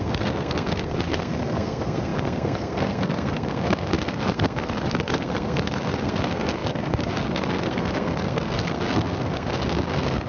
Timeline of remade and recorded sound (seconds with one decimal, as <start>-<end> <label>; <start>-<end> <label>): 0.0-10.3 remade